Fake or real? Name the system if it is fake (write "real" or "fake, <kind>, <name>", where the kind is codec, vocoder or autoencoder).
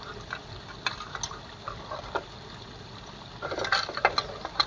real